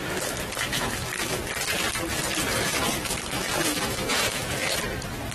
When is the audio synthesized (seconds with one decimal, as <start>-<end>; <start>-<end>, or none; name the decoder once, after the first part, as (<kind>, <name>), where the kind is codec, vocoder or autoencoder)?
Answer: 0.7-1.4 (autoencoder, DAC-VAE); 3.0-4.8